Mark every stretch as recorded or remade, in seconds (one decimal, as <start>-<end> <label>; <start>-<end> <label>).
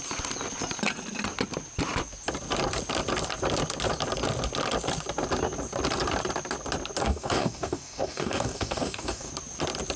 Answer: 0.0-7.0 recorded; 7.0-9.3 remade; 9.3-10.0 recorded